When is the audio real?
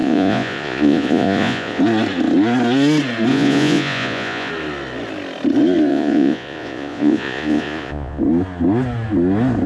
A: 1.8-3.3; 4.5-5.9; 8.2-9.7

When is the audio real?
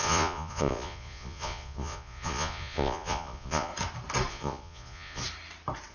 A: 3.7-4.3; 5.2-5.9